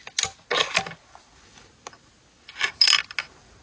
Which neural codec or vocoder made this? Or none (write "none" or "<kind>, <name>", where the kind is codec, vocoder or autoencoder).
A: none